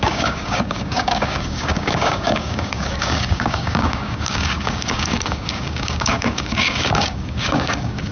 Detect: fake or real fake